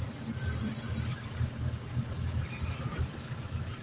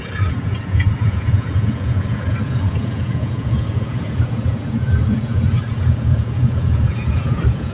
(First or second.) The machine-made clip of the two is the second